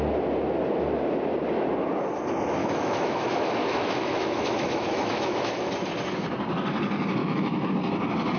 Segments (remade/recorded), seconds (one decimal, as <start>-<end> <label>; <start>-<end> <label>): 0.0-2.6 recorded; 2.6-5.7 remade; 5.7-7.2 recorded; 7.2-7.7 remade; 7.7-8.4 recorded